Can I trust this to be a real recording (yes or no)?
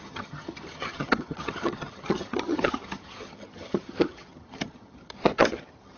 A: no